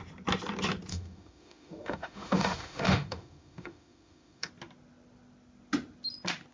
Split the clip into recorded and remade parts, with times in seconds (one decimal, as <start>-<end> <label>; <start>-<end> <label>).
0.0-0.9 recorded; 0.9-4.5 remade; 4.5-6.5 recorded